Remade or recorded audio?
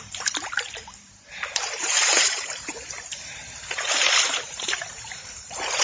remade